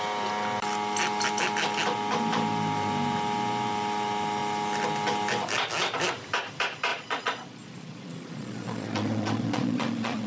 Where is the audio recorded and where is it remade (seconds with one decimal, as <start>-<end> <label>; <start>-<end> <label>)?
0.0-6.9 recorded; 6.9-10.3 remade